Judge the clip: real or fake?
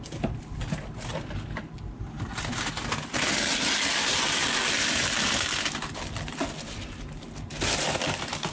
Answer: real